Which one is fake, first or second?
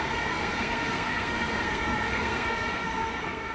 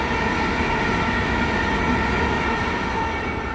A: first